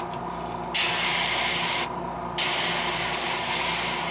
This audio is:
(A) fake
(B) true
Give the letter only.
B